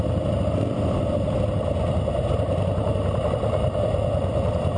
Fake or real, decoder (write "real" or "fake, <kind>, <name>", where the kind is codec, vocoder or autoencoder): real